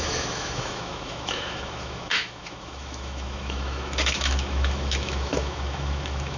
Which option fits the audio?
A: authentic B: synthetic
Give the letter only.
B